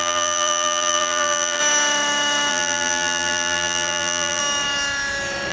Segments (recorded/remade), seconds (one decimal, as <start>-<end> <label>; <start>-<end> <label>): 0.0-1.6 remade; 1.6-2.5 recorded; 2.5-4.4 remade; 4.4-5.5 recorded